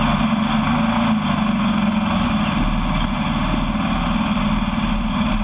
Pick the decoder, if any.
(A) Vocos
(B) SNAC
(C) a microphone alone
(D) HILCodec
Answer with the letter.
C